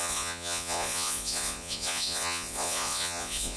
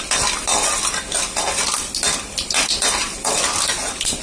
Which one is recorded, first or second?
second